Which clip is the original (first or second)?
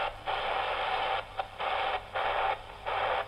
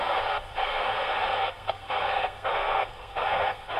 first